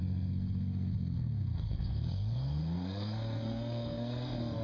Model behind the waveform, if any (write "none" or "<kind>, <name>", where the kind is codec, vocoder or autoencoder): codec, SNAC